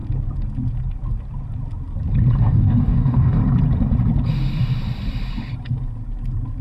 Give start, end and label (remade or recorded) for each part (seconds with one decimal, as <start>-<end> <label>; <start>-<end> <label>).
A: 0.0-2.4 recorded; 2.4-3.4 remade; 3.4-6.6 recorded